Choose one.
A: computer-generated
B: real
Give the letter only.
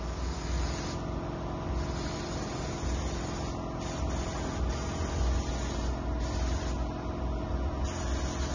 B